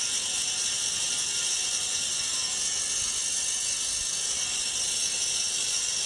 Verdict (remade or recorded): recorded